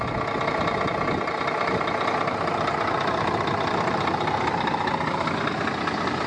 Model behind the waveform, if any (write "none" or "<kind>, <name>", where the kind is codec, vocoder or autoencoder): none